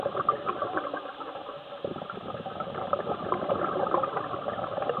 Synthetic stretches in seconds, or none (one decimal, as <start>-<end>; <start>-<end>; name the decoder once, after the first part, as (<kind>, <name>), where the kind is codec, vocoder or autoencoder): none